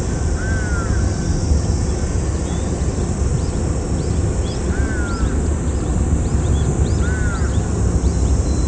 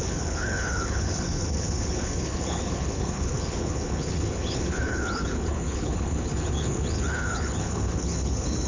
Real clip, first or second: first